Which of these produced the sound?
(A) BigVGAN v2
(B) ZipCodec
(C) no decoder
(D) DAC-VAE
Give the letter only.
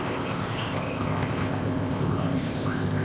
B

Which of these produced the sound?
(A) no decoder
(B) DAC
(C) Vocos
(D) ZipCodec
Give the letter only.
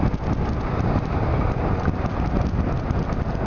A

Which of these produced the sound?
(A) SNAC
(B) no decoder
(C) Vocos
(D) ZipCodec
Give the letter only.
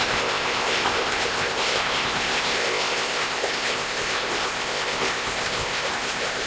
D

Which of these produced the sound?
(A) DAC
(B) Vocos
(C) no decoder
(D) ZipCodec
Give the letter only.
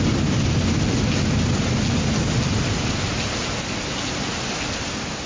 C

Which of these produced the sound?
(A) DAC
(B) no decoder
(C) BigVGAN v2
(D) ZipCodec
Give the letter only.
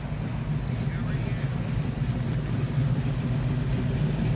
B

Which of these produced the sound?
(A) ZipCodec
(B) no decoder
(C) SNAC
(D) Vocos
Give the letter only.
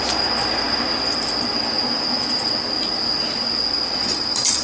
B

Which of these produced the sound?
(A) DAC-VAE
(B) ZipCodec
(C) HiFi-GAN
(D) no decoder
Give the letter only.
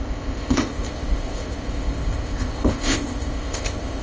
B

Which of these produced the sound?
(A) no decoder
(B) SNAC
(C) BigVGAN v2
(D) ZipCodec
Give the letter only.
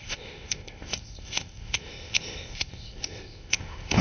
D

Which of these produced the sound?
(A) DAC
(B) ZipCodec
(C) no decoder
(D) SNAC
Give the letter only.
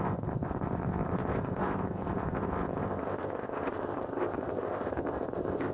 B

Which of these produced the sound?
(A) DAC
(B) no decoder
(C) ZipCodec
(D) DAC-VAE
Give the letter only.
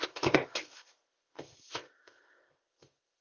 C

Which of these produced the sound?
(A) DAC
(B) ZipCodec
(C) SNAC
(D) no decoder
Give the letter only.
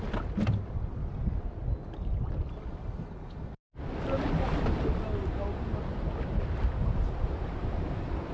D